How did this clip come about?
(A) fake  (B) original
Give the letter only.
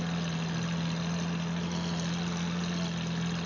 B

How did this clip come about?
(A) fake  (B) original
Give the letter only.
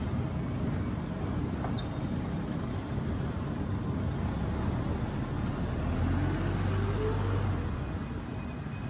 B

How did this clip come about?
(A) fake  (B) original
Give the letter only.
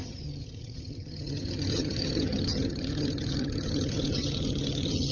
A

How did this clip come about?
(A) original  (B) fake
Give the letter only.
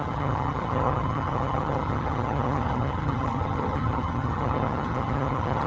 B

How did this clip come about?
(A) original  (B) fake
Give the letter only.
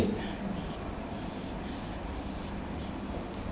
A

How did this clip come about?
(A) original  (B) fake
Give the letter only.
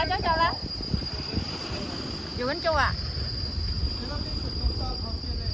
A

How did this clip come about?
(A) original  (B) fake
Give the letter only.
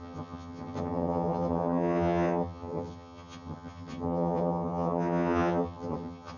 B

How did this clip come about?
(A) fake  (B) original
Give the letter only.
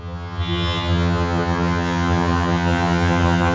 A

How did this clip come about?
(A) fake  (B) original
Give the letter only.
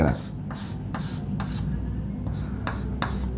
B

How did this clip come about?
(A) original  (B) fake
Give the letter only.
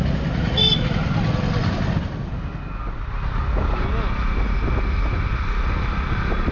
A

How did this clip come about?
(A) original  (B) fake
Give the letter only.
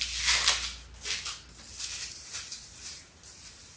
A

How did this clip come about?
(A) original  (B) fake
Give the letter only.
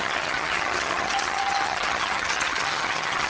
B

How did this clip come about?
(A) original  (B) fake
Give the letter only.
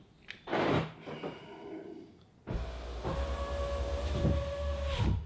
A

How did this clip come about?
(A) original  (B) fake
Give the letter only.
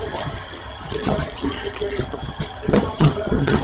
B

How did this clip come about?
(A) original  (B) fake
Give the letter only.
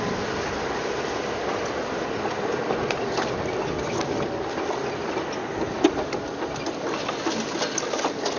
A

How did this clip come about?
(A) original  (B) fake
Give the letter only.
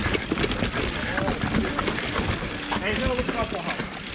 A